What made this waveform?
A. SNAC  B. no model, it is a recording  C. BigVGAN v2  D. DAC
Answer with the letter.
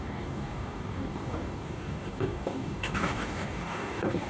D